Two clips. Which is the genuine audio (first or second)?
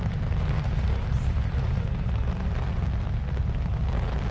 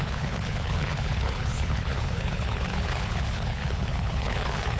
first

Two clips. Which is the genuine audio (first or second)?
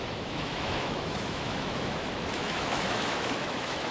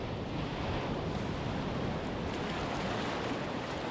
second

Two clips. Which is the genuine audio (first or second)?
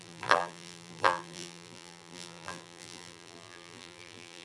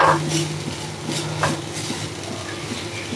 second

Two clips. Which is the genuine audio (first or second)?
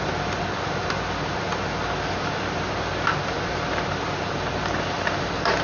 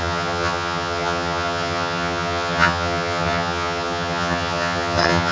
first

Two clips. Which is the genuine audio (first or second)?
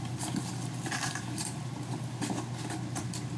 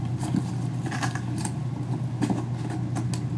second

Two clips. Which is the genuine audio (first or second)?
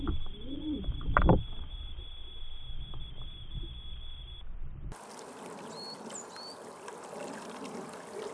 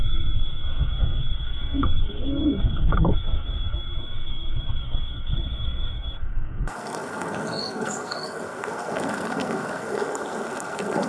first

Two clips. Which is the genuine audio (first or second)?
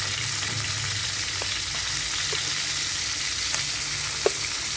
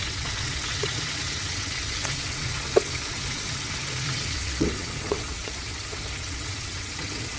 first